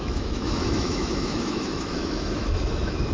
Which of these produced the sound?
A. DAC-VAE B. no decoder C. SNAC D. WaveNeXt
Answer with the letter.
A